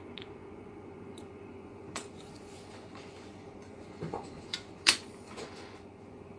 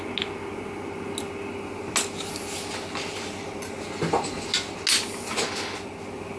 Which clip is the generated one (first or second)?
first